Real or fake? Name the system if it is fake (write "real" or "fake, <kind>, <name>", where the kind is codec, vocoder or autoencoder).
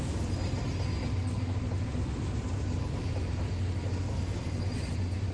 real